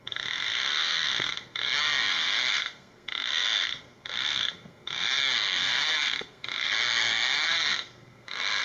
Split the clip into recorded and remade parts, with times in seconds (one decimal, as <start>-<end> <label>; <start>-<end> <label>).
0.0-8.6 remade